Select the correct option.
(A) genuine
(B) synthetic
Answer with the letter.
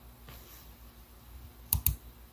A